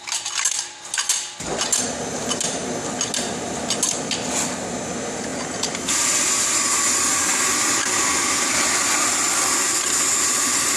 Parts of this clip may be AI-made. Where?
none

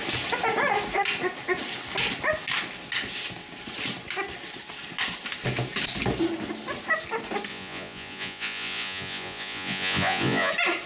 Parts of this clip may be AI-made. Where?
7.5-10.5

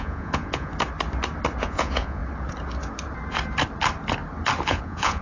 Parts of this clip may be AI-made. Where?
0.0-0.7; 1.6-2.2; 4.6-5.2